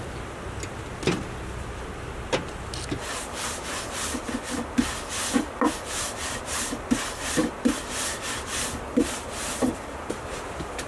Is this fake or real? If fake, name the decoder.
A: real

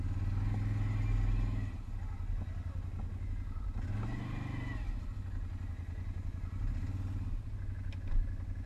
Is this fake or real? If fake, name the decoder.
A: real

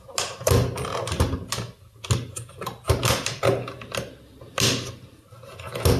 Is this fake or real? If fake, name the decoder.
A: real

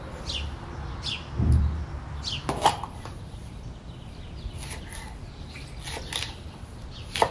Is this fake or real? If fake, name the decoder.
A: real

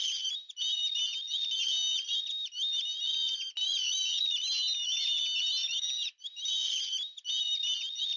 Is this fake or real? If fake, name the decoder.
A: real